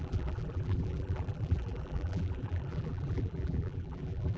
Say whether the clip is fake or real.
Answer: fake